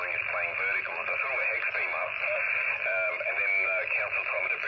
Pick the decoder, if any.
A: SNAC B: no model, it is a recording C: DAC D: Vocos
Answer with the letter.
B